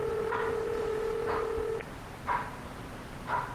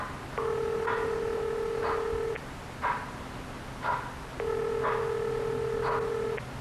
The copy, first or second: first